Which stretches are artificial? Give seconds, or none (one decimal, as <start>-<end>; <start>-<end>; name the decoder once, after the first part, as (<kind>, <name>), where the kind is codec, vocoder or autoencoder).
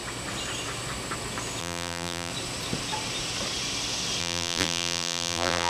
1.6-2.3 (vocoder, BigVGAN v2); 4.2-5.7